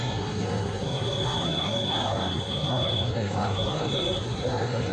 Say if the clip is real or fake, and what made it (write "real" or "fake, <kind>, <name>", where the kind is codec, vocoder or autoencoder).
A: fake, codec, SNAC